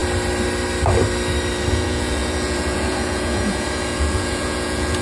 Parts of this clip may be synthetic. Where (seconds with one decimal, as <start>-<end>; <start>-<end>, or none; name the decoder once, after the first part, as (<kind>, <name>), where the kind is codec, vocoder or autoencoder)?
1.7-5.0 (vocoder, Vocos)